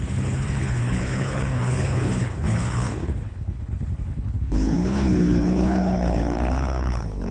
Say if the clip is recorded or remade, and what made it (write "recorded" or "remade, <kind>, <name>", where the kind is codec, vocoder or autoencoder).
remade, codec, HILCodec